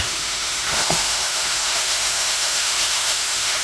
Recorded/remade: remade